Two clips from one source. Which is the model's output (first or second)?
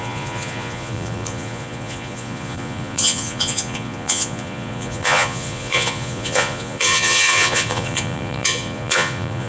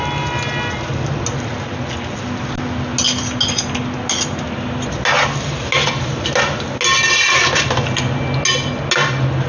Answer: first